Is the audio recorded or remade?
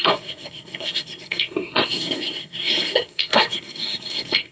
remade